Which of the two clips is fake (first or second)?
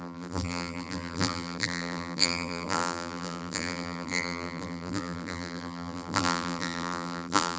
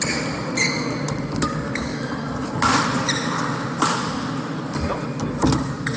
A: first